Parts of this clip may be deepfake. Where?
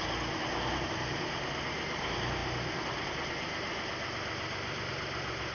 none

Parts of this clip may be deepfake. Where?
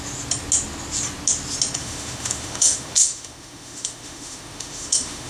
1.8-5.3 (autoencoder, DAC-VAE)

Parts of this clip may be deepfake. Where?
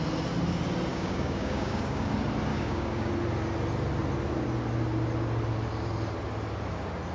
0.9-2.1 (codec, DAC); 2.5-3.1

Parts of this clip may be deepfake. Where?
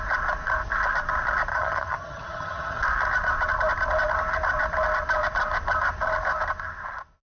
1.5-2.8 (vocoder, HiFi-GAN)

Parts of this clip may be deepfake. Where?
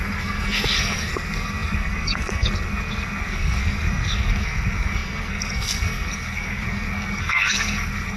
0.0-8.2 (codec, SNAC)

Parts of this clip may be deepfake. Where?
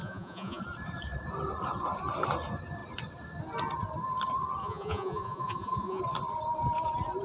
0.0-0.6 (vocoder, Vocos); 4.6-6.0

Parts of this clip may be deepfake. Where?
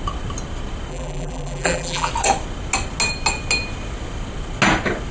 0.9-2.1 (vocoder, BigVGAN v2)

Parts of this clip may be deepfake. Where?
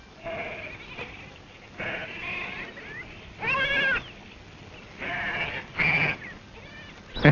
none